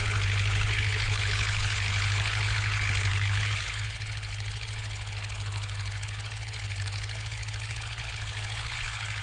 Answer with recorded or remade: remade